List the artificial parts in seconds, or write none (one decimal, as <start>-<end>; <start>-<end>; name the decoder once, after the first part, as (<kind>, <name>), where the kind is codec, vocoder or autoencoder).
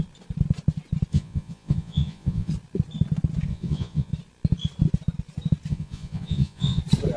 1.1-2.5 (vocoder, Vocos); 3.5-4.1; 5.7-6.8